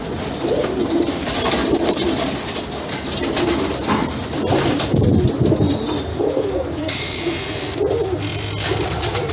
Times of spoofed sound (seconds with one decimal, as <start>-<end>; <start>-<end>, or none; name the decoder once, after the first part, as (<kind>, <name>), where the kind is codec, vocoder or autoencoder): 6.1-7.2 (codec, DAC)